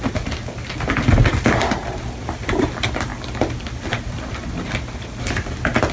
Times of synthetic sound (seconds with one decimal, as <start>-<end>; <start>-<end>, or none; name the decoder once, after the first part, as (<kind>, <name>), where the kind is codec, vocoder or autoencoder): none